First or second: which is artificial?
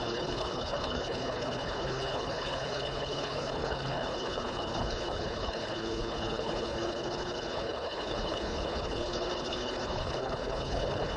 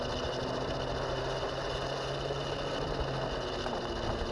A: first